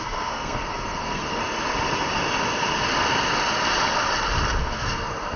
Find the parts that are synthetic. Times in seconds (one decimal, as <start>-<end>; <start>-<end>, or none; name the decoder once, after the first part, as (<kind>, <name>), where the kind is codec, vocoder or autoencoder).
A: 0.0-1.4 (codec, SNAC); 4.6-5.4